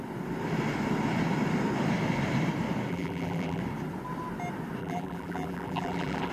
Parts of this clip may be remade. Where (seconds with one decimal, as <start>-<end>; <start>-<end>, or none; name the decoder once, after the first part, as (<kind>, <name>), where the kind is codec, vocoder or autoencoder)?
2.9-3.6 (vocoder, BigVGAN v2); 4.8-6.3